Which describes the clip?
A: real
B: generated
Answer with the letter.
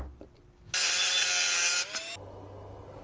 A